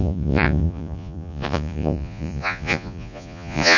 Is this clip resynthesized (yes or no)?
yes